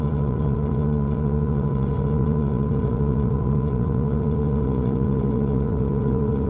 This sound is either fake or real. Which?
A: fake